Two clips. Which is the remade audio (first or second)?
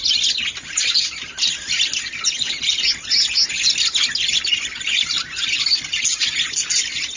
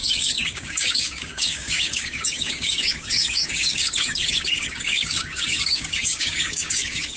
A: second